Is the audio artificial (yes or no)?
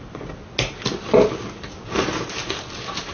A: no